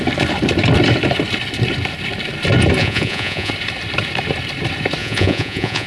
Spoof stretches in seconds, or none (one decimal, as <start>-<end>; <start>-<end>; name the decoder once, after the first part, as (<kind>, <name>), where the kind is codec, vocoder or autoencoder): 2.8-3.5 (vocoder, Vocos); 5.0-5.9